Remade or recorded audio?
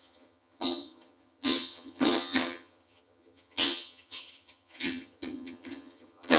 remade